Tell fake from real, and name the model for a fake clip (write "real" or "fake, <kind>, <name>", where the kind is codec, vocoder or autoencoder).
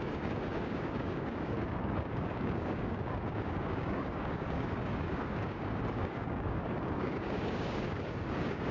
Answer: fake, codec, DAC